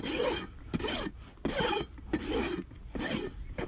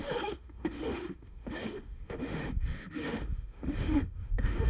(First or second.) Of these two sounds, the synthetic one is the second